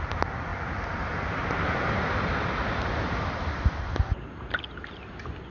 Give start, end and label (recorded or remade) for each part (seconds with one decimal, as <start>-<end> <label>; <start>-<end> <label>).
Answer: 0.0-0.5 recorded; 0.5-3.8 remade; 3.8-5.5 recorded